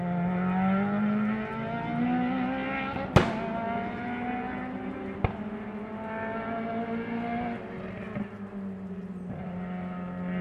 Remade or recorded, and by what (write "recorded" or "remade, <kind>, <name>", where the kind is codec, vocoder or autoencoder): recorded